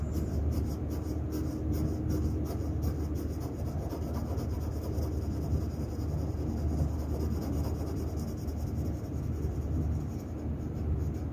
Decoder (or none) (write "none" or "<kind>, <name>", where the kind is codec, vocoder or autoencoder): none